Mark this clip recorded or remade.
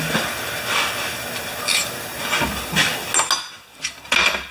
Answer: recorded